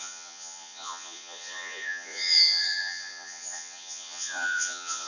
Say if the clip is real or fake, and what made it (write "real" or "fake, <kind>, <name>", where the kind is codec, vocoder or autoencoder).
fake, vocoder, Vocos